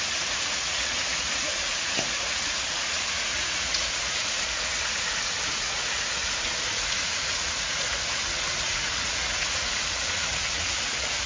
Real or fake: fake